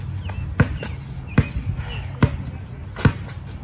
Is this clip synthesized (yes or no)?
no